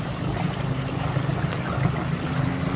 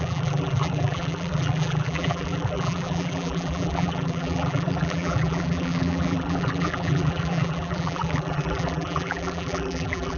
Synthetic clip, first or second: second